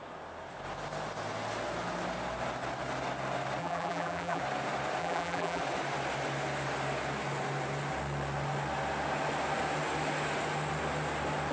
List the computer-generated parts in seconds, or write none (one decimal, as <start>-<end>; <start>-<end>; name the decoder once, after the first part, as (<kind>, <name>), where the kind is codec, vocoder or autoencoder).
3.6-4.4 (vocoder, BigVGAN v2); 5.0-5.6